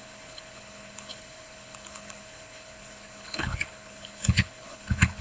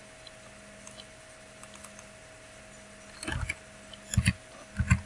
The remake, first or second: first